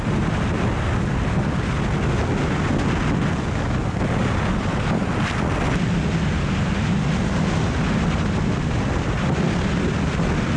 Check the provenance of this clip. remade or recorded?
recorded